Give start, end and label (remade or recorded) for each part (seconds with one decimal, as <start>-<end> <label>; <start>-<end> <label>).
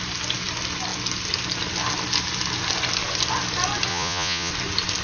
0.0-3.9 recorded; 3.9-4.5 remade; 4.5-5.0 recorded